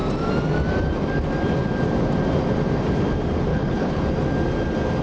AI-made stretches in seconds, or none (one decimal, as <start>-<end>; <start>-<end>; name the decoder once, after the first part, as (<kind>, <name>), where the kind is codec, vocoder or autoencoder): 3.5-4.0 (codec, HILCodec)